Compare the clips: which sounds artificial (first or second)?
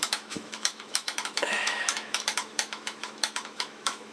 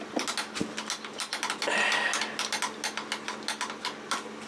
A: first